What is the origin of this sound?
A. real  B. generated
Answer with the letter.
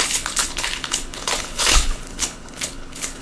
B